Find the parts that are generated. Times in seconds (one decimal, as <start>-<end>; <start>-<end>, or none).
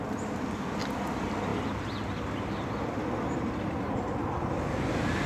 none